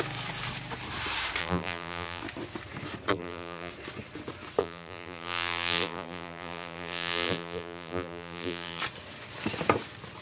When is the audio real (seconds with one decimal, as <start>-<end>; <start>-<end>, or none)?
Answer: 0.0-1.4; 2.2-3.1; 3.7-4.6; 8.8-10.2